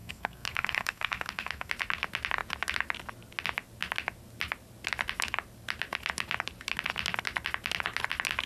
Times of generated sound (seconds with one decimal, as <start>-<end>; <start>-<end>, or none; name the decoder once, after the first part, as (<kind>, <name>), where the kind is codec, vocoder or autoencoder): 0.0-1.7 (codec, SNAC)